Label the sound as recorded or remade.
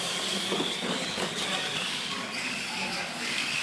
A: remade